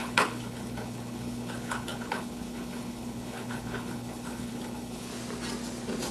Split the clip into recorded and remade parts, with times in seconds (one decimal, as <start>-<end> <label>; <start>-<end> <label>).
0.0-5.1 remade; 5.1-6.1 recorded

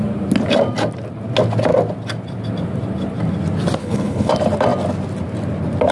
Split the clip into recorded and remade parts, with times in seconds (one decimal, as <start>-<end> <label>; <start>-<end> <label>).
0.0-3.8 recorded; 3.8-4.3 remade; 4.3-5.9 recorded

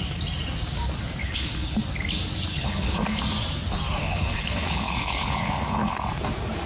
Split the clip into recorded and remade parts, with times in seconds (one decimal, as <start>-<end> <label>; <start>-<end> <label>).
0.0-1.2 recorded; 1.2-1.8 remade; 1.8-2.5 recorded; 2.5-3.2 remade; 3.2-4.0 recorded; 4.0-6.1 remade; 6.1-6.7 recorded

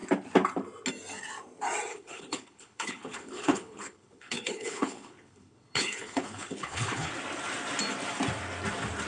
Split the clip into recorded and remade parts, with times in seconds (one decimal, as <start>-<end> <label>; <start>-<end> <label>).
0.0-1.9 recorded; 1.9-7.1 remade; 7.1-9.1 recorded